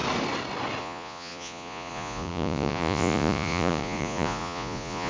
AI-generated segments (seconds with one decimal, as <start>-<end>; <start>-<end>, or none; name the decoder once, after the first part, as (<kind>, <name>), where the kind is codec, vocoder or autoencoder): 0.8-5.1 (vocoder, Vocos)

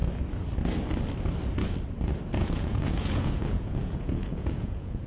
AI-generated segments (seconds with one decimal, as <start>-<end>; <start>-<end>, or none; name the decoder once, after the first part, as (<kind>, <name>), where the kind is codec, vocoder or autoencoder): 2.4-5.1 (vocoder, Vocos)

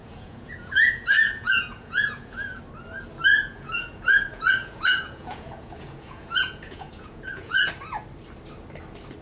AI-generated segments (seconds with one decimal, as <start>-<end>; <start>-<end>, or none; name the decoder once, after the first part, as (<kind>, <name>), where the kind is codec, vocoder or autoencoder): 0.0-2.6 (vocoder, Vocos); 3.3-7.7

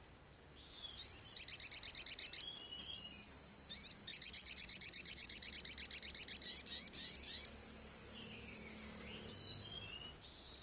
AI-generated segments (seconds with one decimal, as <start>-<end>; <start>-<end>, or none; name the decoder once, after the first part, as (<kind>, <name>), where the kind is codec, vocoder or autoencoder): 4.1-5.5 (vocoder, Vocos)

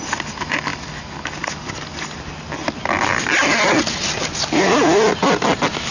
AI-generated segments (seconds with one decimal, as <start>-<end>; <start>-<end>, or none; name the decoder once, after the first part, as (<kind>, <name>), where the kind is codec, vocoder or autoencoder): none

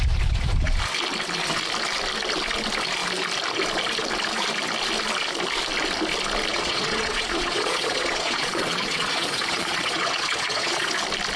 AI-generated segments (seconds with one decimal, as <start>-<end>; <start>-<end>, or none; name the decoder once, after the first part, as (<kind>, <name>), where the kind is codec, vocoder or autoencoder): 6.5-10.9 (vocoder, Vocos)